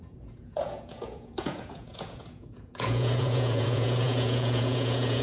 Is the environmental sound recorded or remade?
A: remade